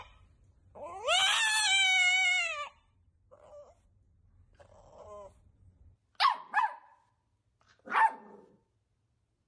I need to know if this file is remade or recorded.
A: recorded